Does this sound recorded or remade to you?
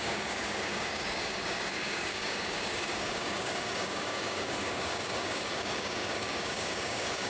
remade